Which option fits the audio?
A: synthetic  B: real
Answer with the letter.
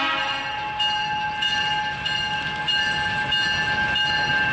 B